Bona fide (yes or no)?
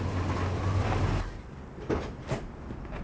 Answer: yes